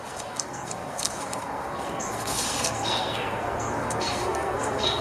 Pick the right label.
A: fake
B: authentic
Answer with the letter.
A